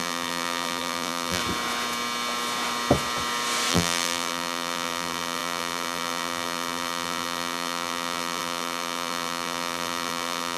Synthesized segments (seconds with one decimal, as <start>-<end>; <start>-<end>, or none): 0.0-1.4; 3.7-10.6